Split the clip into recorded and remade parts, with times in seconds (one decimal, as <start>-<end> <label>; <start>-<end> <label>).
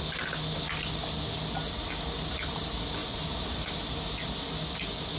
0.0-3.0 recorded; 3.0-3.8 remade; 3.8-5.2 recorded